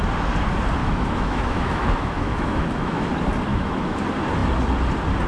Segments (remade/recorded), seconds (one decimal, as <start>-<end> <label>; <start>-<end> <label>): 0.0-0.8 recorded; 0.8-3.1 remade; 3.1-3.5 recorded; 3.5-4.0 remade; 4.0-5.3 recorded